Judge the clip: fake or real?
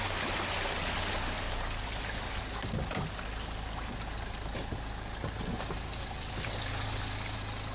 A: real